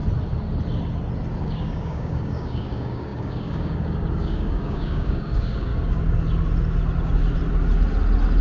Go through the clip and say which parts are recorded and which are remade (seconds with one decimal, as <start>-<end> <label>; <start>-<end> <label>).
0.0-1.4 recorded; 1.4-5.7 remade; 5.7-8.4 recorded